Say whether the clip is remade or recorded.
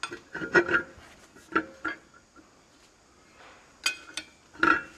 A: recorded